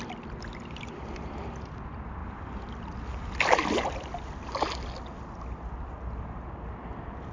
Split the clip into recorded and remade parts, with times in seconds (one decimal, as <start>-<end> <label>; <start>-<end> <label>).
0.0-7.3 recorded